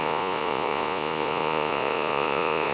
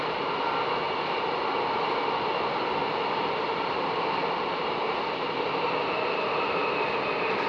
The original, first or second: second